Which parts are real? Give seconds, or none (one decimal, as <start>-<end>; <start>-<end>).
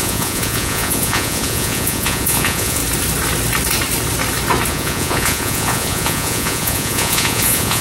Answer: 2.8-4.7